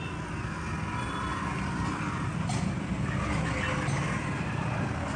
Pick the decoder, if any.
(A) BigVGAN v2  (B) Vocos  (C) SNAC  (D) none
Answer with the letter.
D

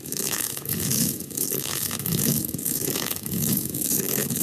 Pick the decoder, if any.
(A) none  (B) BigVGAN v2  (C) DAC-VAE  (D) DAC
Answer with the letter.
C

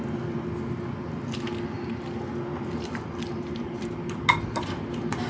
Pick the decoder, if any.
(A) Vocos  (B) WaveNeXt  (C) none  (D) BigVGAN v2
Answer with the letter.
C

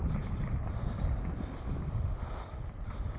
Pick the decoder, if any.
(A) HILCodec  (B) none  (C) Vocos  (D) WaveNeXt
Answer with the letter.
B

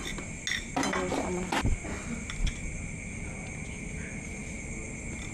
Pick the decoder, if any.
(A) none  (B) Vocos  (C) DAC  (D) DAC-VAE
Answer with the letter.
A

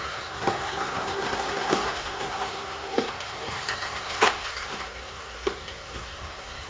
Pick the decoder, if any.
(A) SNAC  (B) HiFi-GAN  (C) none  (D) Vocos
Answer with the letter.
A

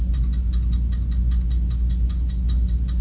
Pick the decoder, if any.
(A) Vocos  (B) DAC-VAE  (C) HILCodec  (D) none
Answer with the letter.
D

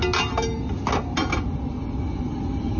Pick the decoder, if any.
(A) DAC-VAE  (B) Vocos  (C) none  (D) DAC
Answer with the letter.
C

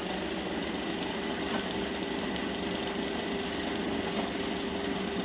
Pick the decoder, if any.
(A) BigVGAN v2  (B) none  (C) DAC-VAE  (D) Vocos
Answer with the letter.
B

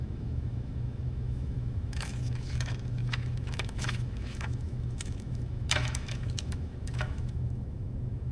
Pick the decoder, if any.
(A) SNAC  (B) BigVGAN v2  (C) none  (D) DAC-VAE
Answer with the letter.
D